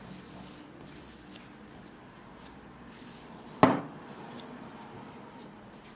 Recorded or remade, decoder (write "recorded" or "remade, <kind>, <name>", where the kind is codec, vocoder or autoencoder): recorded